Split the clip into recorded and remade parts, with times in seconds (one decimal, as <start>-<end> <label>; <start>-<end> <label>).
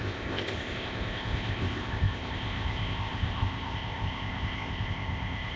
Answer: 0.0-5.6 remade